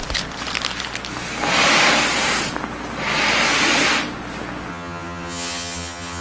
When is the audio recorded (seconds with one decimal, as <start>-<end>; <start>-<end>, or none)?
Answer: 0.0-4.7